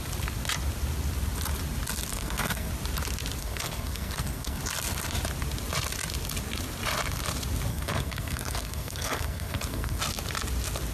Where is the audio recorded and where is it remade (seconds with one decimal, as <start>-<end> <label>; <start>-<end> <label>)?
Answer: 0.0-2.1 recorded; 2.1-2.7 remade; 2.7-3.4 recorded; 3.4-4.6 remade; 4.6-7.7 recorded; 7.7-10.0 remade; 10.0-10.9 recorded